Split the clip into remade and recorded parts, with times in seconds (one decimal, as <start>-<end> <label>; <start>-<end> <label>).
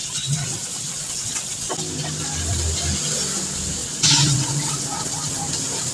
0.0-1.7 remade; 1.7-3.8 recorded; 3.8-5.4 remade; 5.4-5.9 recorded